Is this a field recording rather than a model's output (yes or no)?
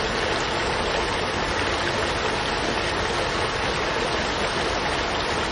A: yes